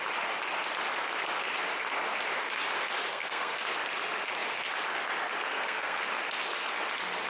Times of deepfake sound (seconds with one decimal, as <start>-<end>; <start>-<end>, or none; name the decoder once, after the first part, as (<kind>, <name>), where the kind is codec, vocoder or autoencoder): 3.1-3.6 (codec, SNAC); 5.5-6.0